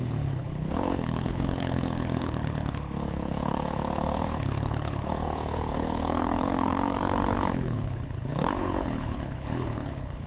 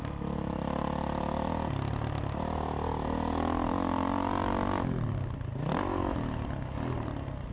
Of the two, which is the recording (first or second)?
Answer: second